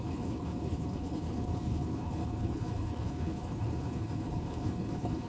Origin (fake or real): fake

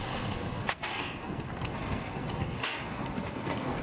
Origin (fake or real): fake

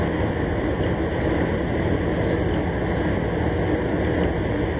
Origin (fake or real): real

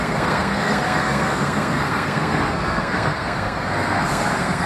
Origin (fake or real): fake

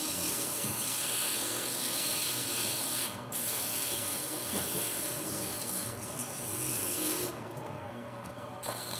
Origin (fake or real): fake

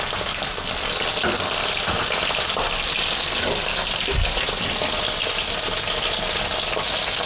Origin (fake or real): real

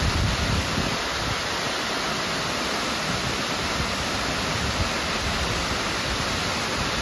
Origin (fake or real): real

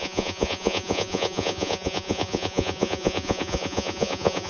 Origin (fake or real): fake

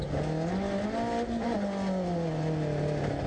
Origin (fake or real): real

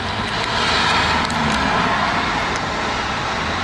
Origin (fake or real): real